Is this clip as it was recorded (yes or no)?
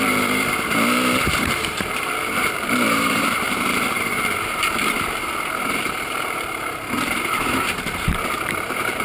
no